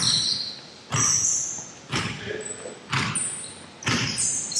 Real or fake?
real